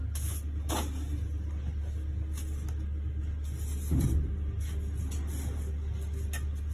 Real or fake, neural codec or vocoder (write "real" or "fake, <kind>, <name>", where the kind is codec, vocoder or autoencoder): real